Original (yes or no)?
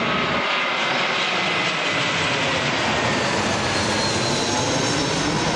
yes